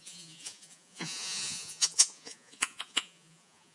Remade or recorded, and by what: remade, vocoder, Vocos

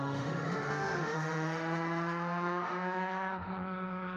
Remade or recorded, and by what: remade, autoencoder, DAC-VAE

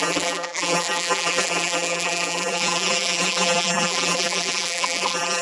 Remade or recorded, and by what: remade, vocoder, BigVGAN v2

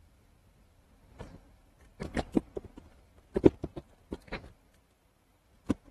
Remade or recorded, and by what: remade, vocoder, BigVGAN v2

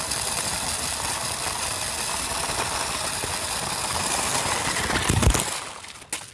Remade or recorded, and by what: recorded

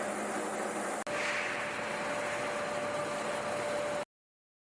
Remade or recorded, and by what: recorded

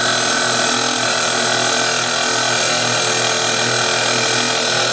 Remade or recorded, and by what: recorded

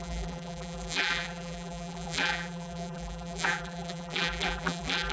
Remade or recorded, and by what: remade, vocoder, BigVGAN v2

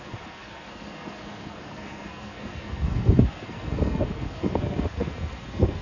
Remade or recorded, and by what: remade, codec, SNAC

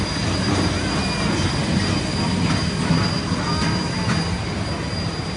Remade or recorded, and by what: recorded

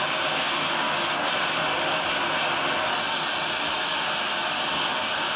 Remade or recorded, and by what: recorded